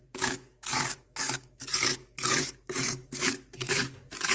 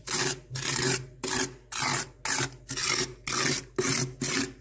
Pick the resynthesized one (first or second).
first